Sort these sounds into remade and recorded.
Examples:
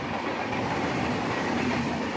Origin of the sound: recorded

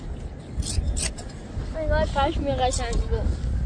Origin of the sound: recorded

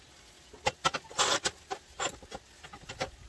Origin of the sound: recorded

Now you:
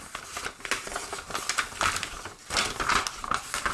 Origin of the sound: recorded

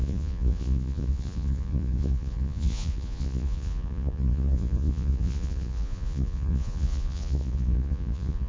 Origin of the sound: remade